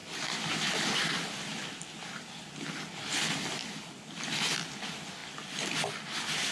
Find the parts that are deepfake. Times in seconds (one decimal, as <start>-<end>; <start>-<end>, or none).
0.0-2.7